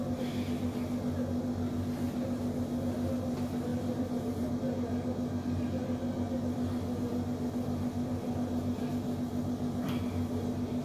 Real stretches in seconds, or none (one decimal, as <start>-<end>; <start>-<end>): 0.0-3.7; 4.5-10.8